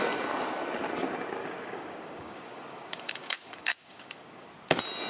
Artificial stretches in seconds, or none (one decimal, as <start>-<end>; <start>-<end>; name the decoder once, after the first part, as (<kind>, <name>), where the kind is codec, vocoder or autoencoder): 1.4-4.5 (codec, DAC)